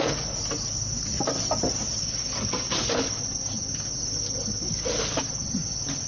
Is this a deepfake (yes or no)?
no